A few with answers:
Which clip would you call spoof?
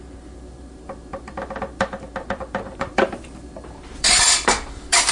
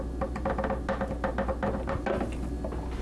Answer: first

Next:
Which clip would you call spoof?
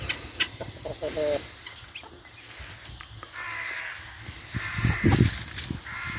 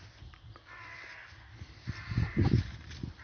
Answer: second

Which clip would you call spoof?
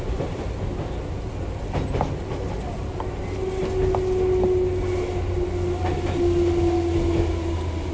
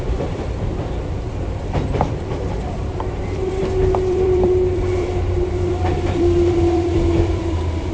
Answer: second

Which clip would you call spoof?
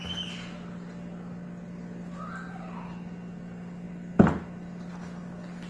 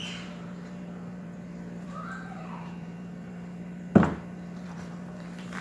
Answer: second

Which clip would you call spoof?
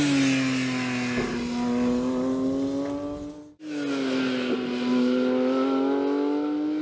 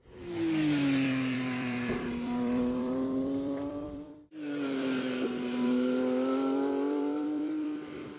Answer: second